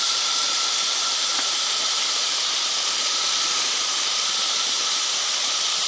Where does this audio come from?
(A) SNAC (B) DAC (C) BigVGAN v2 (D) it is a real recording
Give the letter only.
C